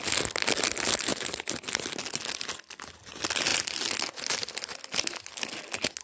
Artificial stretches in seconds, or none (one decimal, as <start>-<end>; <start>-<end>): none